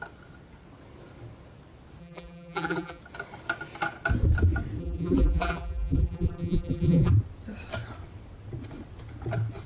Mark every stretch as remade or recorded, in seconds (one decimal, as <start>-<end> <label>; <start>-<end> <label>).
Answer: 0.0-2.0 recorded; 2.0-3.0 remade; 3.0-4.8 recorded; 4.8-7.1 remade; 7.1-9.7 recorded